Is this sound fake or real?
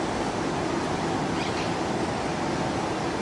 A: real